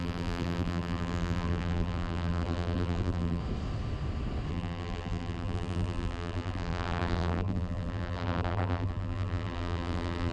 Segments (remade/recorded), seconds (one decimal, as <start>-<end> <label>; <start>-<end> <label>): 0.0-3.4 remade; 3.4-4.5 recorded; 4.5-10.3 remade